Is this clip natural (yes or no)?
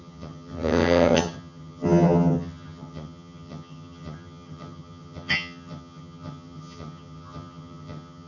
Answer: no